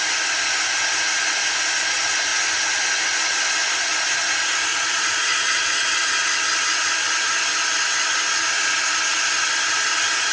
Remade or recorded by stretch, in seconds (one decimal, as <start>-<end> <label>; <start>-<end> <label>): 0.0-4.7 recorded; 4.7-6.1 remade; 6.1-10.3 recorded